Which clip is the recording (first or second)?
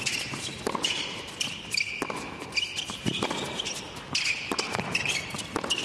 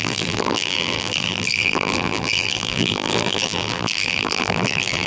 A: first